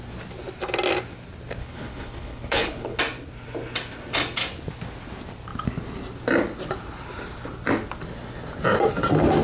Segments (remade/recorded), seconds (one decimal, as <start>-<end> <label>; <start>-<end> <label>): 0.0-1.6 recorded; 1.6-3.0 remade; 3.0-9.4 recorded